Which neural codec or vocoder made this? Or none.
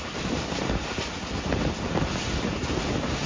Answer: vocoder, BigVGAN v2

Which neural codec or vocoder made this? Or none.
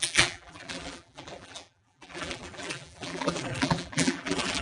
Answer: vocoder, BigVGAN v2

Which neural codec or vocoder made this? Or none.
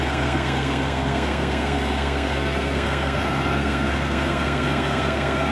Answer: codec, SNAC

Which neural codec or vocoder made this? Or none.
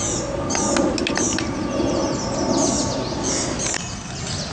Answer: none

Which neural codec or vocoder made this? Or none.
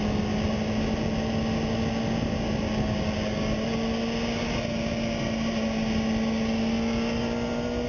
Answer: none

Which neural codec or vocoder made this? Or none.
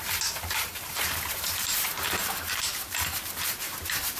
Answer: vocoder, BigVGAN v2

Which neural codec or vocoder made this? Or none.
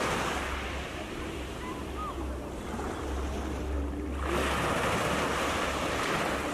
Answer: none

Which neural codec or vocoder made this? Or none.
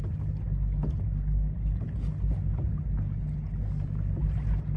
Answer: none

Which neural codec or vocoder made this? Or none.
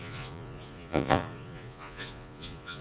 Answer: vocoder, Vocos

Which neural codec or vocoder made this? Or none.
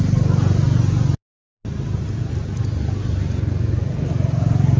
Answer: none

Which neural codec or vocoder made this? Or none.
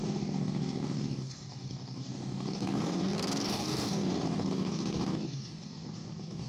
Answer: codec, DAC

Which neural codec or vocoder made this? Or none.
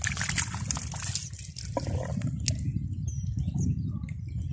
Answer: none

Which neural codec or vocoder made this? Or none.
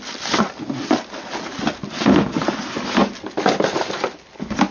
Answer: none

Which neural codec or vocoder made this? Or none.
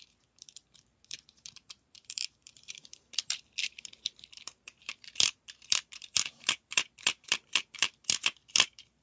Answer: vocoder, BigVGAN v2